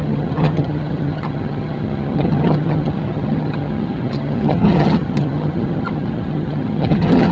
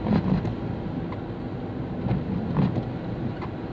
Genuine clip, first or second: second